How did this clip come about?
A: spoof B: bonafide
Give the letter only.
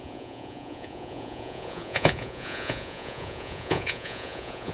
A